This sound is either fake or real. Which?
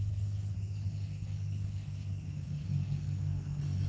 fake